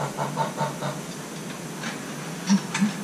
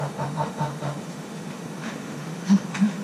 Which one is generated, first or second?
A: second